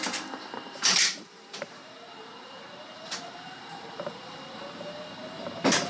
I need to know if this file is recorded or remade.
remade